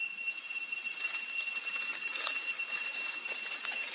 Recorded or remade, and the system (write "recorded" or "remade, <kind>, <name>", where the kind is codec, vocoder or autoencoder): recorded